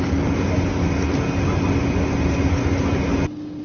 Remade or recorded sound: recorded